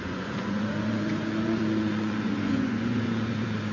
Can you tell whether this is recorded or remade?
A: remade